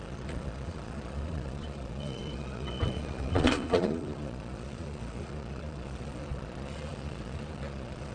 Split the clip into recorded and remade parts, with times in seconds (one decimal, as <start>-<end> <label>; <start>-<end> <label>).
0.0-8.1 remade